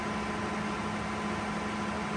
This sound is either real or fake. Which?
real